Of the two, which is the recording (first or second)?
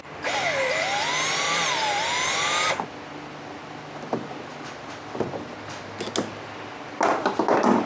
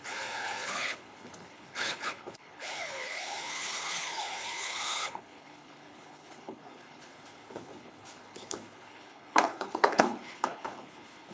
first